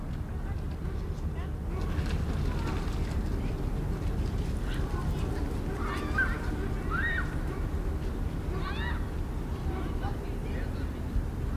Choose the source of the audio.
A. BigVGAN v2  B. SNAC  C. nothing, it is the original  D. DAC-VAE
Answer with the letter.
C